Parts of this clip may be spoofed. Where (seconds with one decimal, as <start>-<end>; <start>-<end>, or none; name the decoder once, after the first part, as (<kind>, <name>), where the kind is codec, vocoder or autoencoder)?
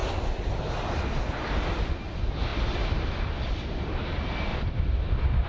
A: 0.0-0.6 (vocoder, BigVGAN v2); 4.5-5.5